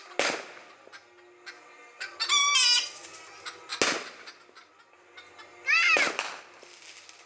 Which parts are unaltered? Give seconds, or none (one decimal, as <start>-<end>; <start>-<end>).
0.0-7.3